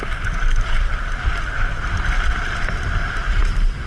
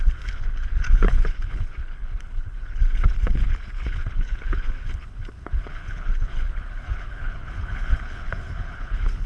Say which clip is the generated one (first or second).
second